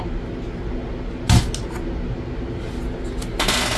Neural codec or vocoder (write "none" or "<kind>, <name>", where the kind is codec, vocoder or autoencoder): none